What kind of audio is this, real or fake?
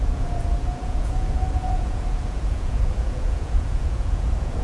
fake